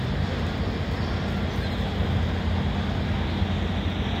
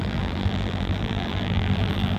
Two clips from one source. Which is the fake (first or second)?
second